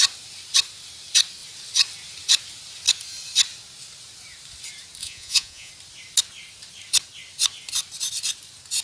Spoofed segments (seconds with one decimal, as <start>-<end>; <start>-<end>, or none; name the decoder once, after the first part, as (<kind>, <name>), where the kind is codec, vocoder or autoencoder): 5.0-5.7 (vocoder, Vocos)